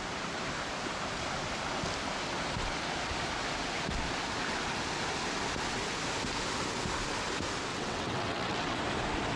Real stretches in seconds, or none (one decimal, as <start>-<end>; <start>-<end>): 0.0-7.7; 8.8-9.4